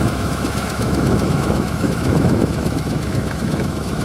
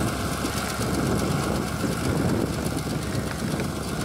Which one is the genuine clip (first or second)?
second